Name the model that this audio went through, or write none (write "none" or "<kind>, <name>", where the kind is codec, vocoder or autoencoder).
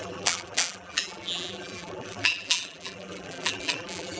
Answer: vocoder, BigVGAN v2